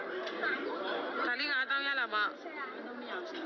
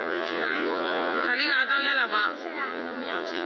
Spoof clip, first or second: second